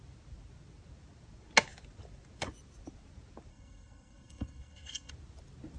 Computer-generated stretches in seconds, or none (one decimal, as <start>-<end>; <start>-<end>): 3.5-5.1